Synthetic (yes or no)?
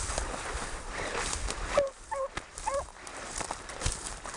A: no